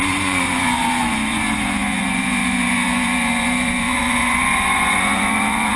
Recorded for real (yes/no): no